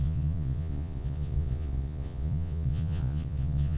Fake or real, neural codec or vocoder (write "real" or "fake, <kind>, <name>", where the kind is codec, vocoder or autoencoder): fake, vocoder, Vocos